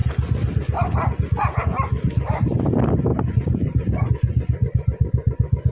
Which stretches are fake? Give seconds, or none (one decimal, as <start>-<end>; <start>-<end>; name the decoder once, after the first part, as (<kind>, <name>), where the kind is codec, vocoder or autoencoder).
none